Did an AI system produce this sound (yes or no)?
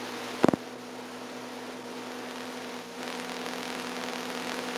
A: no